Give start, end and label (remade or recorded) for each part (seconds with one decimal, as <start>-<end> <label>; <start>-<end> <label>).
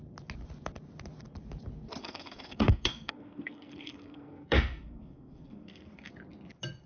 0.0-2.0 recorded; 2.0-6.1 remade; 6.1-6.9 recorded